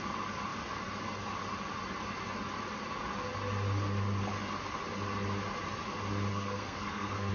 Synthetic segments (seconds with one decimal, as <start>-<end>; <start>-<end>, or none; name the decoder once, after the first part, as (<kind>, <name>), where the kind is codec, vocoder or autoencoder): 6.3-7.3 (codec, SNAC)